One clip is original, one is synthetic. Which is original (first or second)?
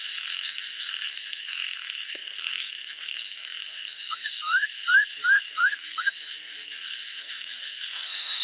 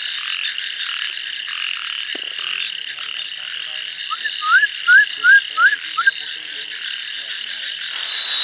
second